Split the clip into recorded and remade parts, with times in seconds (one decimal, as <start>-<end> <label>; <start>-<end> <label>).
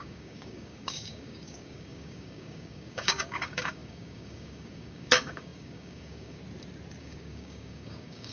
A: 0.0-6.4 remade; 6.4-7.0 recorded; 7.0-8.3 remade